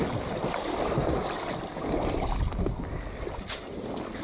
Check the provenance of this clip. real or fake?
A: real